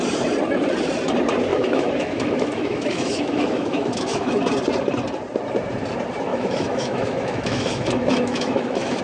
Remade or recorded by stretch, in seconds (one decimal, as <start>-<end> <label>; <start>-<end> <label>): 0.0-1.5 recorded; 1.5-4.4 remade; 4.4-6.3 recorded; 6.3-9.0 remade